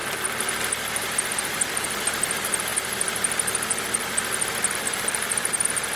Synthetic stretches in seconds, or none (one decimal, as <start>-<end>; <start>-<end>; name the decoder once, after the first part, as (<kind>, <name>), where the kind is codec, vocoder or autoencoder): none